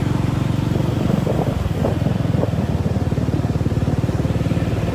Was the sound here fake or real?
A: real